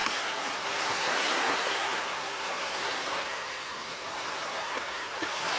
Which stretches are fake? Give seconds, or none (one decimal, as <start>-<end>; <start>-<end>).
0.0-5.6